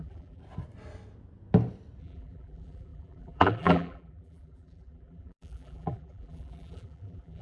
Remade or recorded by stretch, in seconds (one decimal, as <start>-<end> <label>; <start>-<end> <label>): 0.0-0.4 remade; 0.4-2.0 recorded; 2.0-7.4 remade